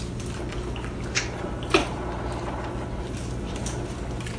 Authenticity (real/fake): real